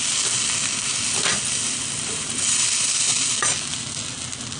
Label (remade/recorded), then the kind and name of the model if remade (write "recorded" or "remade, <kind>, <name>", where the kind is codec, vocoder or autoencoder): recorded